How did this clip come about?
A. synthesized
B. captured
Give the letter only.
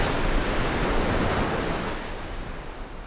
B